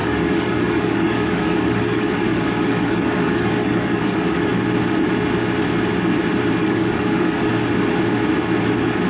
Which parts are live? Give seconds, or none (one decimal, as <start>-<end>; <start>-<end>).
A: 4.5-6.6; 7.5-9.1